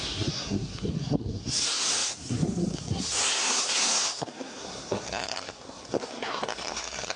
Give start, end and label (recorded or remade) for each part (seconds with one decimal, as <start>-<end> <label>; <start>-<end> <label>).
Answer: 0.0-7.2 remade